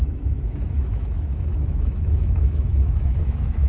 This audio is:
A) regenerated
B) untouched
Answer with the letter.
A